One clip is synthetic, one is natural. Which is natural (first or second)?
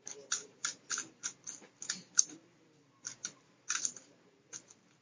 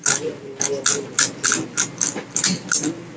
second